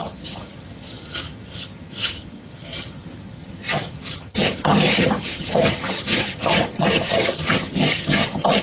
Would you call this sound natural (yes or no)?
no